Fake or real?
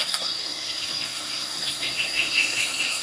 fake